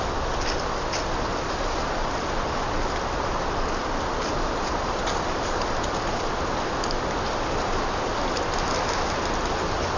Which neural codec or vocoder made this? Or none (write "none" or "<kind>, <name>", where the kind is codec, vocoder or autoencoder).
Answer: none